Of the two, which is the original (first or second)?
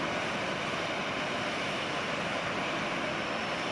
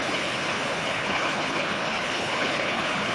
first